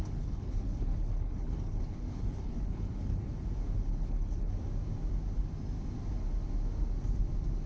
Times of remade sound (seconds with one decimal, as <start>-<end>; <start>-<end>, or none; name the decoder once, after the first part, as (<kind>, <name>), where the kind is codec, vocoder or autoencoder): 0.0-3.3 (codec, HILCodec); 3.9-4.5